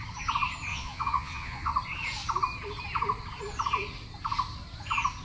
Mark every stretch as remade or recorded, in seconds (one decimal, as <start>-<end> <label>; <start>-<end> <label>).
0.0-0.7 recorded; 0.7-1.7 remade; 1.7-5.2 recorded